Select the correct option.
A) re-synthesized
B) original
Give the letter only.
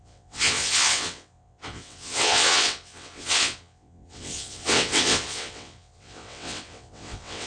A